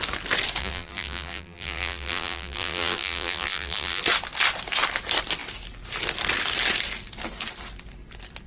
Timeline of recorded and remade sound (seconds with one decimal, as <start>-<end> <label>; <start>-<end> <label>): 0.0-0.6 recorded; 0.6-4.0 remade; 4.0-8.5 recorded

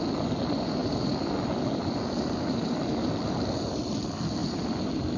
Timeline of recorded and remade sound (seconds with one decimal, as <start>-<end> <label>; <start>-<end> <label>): 0.0-0.8 recorded; 0.8-3.9 remade; 3.9-4.4 recorded; 4.4-5.2 remade